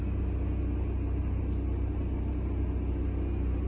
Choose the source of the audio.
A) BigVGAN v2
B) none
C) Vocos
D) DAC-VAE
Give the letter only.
B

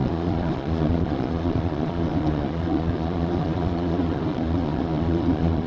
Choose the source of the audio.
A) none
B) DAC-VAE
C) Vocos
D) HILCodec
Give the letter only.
C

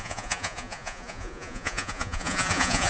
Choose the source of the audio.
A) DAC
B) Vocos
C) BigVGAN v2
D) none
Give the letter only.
B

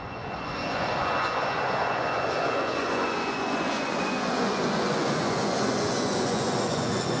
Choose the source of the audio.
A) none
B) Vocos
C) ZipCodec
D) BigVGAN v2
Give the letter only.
B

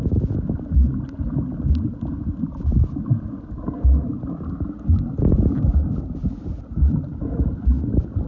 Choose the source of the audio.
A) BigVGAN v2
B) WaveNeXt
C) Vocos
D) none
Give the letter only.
D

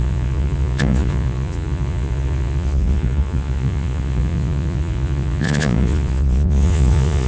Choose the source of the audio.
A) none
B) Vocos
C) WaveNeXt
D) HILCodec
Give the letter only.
B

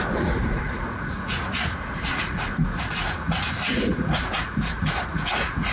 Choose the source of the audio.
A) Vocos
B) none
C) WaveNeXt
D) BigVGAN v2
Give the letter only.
A